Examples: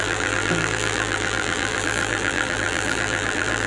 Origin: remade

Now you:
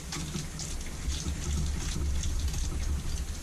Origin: recorded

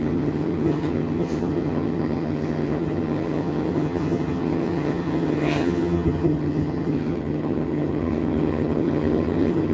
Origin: remade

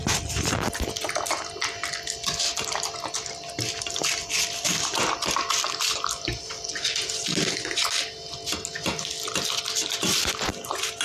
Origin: recorded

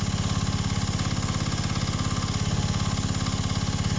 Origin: recorded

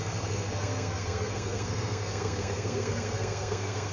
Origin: remade